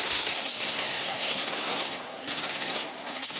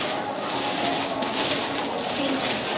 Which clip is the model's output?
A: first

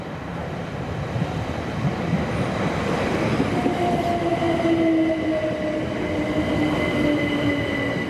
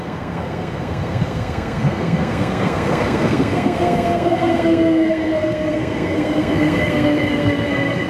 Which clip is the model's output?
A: second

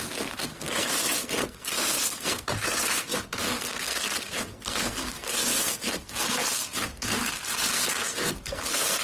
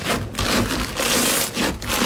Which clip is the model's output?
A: first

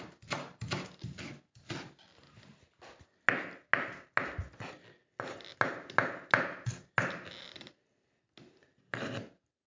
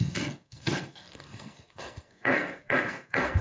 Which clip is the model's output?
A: second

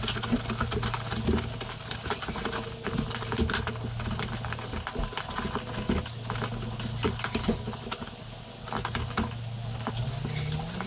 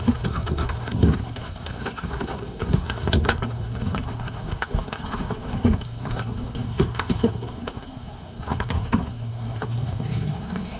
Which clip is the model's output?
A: second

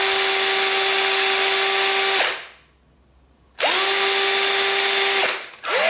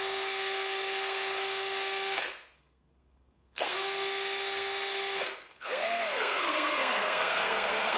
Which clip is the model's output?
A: second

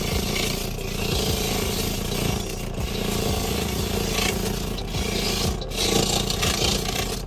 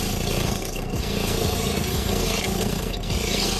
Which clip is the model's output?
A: second